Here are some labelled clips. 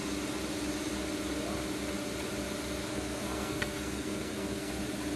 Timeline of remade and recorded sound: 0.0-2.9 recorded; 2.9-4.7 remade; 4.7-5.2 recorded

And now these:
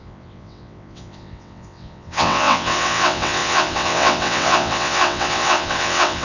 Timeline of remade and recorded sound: 0.0-6.2 remade

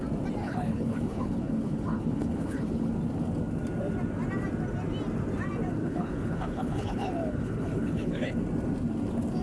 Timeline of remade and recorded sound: 0.0-0.4 recorded; 0.4-2.9 remade; 2.9-5.8 recorded; 5.8-8.3 remade; 8.3-9.4 recorded

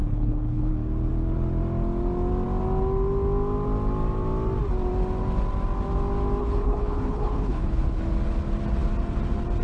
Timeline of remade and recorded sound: 0.0-0.7 remade; 0.7-6.4 recorded; 6.4-8.0 remade; 8.0-9.6 recorded

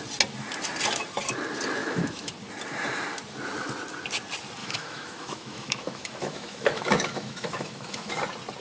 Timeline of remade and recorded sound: 0.0-1.8 recorded; 1.8-2.3 remade; 2.3-4.6 recorded; 4.6-8.2 remade; 8.2-8.6 recorded